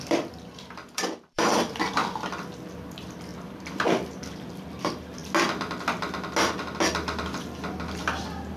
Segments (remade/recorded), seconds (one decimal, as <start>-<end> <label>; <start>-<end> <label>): 0.0-2.0 remade; 2.0-2.7 recorded; 2.7-3.3 remade; 3.3-4.8 recorded; 4.8-5.2 remade; 5.2-6.9 recorded; 6.9-8.6 remade